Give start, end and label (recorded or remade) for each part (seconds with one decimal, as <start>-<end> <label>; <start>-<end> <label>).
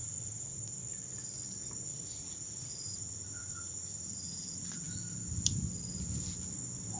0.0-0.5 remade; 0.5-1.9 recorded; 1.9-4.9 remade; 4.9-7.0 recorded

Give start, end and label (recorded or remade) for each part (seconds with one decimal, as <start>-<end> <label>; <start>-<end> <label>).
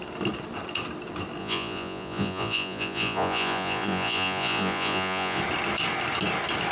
0.0-1.4 recorded; 1.4-5.4 remade; 5.4-6.7 recorded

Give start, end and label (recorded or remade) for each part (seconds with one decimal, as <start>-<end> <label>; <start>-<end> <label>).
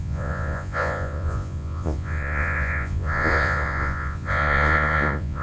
0.0-5.4 remade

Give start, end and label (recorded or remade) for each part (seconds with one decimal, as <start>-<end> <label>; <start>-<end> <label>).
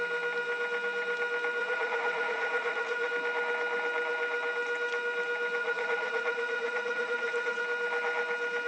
0.0-1.6 recorded; 1.6-3.1 remade; 3.1-5.6 recorded; 5.6-7.6 remade; 7.6-8.7 recorded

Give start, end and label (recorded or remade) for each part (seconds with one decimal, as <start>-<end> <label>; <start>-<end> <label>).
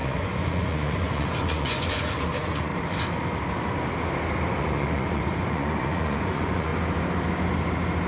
0.0-2.7 remade; 2.7-4.6 recorded; 4.6-6.7 remade; 6.7-8.1 recorded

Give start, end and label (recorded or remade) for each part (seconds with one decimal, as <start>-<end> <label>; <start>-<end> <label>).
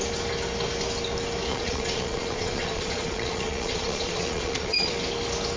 0.0-1.5 recorded; 1.5-4.9 remade; 4.9-5.6 recorded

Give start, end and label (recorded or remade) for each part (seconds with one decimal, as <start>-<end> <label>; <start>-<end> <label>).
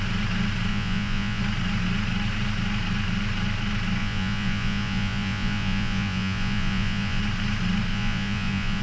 0.0-0.7 recorded; 0.7-1.4 remade; 1.4-4.0 recorded; 4.0-7.2 remade; 7.2-7.9 recorded; 7.9-8.8 remade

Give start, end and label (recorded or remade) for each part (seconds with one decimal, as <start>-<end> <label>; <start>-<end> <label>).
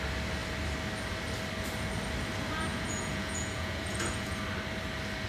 0.0-2.7 recorded; 2.7-4.4 remade; 4.4-5.3 recorded